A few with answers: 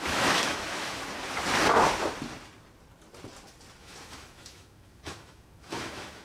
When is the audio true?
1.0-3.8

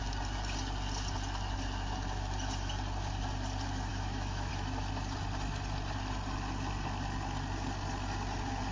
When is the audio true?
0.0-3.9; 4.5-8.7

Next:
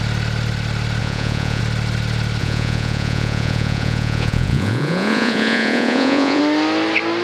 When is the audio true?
0.0-1.0; 1.6-2.4; 6.4-7.2

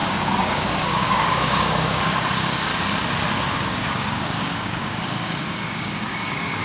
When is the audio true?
2.7-3.5

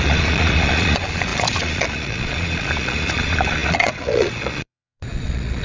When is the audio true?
none